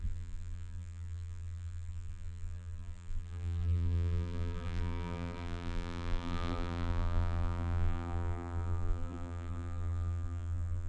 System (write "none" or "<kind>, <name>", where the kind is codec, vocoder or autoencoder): vocoder, BigVGAN v2